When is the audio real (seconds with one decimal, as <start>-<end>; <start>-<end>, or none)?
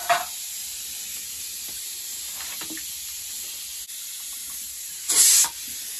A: 0.0-6.0